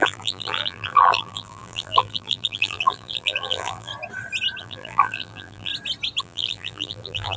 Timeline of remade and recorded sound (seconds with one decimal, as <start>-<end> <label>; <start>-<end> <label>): 0.0-3.9 remade; 3.9-4.6 recorded; 4.6-5.7 remade; 5.7-6.2 recorded; 6.2-7.4 remade